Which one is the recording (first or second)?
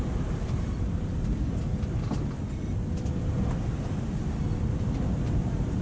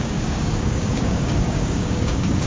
first